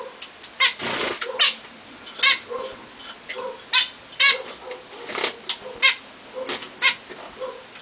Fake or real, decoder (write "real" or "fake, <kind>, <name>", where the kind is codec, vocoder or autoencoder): real